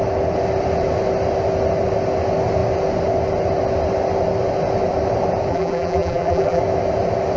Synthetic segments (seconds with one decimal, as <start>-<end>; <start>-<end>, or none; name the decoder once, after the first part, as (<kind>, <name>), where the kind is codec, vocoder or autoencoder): 5.5-6.6 (vocoder, BigVGAN v2)